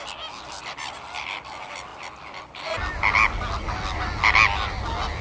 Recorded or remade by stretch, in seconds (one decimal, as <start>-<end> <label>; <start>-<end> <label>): 0.0-5.2 recorded